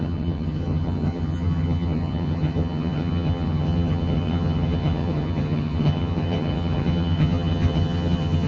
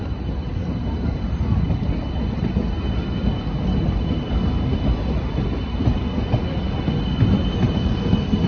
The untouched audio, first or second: second